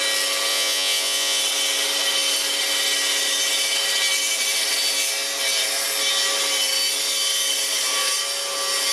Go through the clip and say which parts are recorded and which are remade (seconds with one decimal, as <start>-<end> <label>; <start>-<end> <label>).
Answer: 0.0-0.5 recorded; 0.5-1.4 remade; 1.4-8.9 recorded